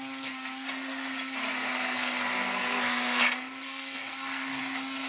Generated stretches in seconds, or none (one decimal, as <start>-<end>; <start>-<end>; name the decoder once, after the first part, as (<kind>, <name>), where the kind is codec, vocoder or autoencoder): 1.5-4.6 (codec, SNAC)